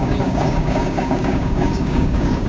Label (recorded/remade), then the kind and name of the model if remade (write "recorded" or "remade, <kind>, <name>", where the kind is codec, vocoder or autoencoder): remade, codec, DAC